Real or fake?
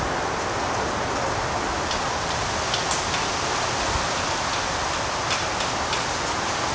real